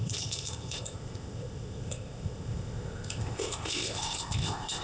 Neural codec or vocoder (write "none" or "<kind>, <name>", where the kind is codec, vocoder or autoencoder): codec, ZipCodec